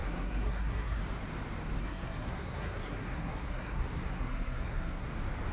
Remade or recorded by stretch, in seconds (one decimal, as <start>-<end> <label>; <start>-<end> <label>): 0.0-1.0 remade; 1.0-1.8 recorded; 1.8-5.1 remade; 5.1-5.5 recorded